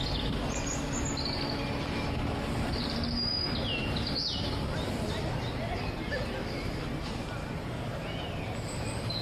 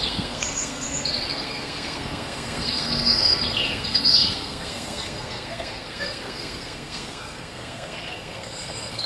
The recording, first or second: first